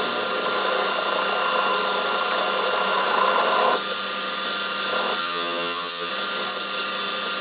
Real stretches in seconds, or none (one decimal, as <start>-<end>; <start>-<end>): 0.0-5.2; 6.1-7.4